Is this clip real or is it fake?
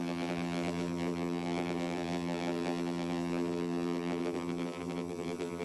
fake